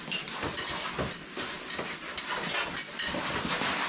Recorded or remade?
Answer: recorded